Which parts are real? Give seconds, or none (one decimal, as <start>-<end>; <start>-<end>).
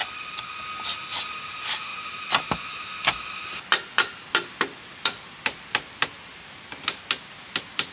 0.6-4.7; 5.4-7.9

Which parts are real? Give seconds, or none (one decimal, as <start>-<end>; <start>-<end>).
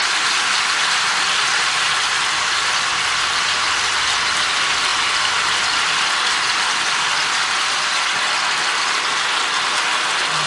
4.9-5.4; 7.9-10.1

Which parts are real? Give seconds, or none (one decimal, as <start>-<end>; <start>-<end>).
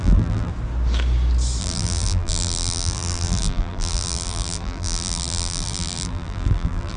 0.5-1.6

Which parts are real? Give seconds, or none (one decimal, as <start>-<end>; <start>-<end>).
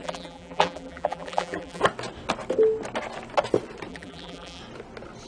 1.8-3.9; 4.6-5.3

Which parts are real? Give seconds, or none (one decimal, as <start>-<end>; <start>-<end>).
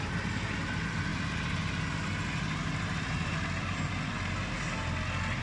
0.0-5.4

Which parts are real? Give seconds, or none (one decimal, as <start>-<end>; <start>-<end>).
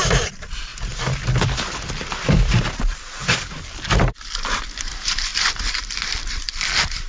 0.7-1.4